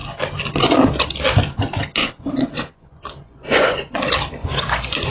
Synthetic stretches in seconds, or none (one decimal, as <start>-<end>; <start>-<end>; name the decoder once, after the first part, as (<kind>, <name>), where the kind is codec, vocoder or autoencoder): 2.0-4.0 (vocoder, Vocos); 4.4-5.1